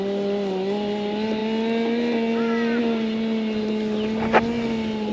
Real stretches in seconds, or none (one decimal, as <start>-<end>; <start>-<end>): 0.0-5.1